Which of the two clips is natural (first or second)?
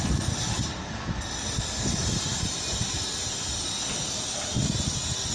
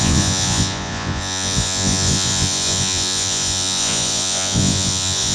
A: first